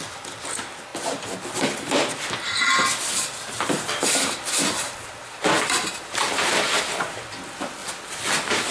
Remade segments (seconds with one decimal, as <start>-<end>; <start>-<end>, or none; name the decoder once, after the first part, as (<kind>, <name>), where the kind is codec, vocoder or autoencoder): 3.0-7.0 (vocoder, BigVGAN v2)